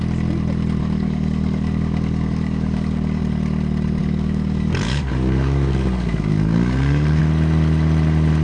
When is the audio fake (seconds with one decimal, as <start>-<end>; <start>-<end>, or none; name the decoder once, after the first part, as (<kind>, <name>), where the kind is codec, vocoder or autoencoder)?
0.8-3.2 (codec, DAC); 4.0-7.2